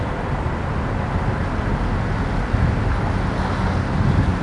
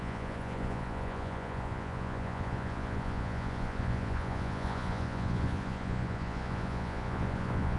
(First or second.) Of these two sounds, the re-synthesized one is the second